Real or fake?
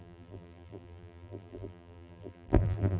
fake